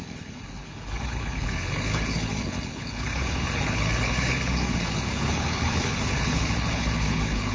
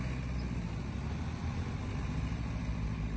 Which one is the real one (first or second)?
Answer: second